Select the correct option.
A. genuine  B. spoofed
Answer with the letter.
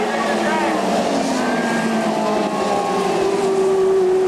A